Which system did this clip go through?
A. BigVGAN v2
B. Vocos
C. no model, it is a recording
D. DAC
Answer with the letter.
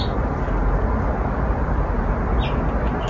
C